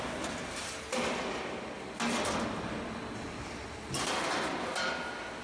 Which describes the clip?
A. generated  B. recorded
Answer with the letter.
B